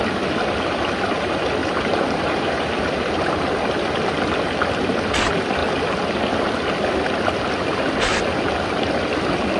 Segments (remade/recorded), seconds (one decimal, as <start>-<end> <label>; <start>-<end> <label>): 0.0-1.6 recorded; 1.6-3.3 remade; 3.3-9.6 recorded